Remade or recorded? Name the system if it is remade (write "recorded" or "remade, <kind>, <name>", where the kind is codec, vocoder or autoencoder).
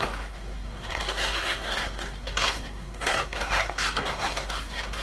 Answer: remade, codec, SNAC